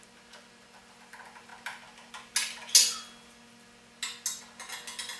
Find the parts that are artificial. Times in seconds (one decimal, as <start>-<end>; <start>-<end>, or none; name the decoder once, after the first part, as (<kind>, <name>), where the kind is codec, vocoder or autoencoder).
none